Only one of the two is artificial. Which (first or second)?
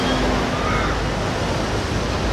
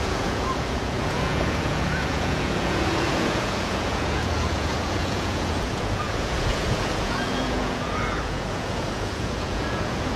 second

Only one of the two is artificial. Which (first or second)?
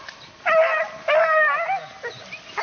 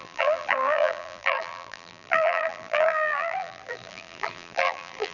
second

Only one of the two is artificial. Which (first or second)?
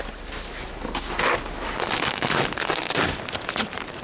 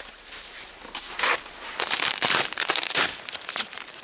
second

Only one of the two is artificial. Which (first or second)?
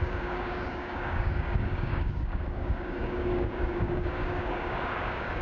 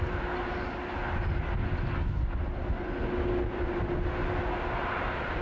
first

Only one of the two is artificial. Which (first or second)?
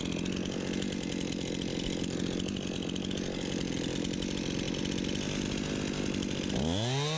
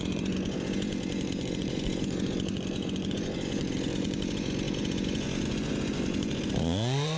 second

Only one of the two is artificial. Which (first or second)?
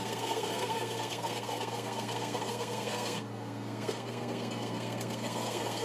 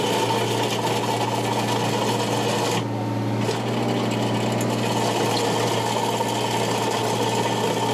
first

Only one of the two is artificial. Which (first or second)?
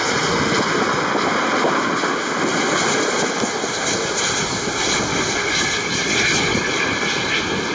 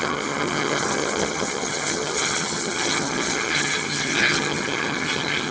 second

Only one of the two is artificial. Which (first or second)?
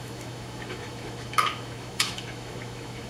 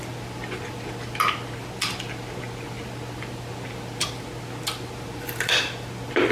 first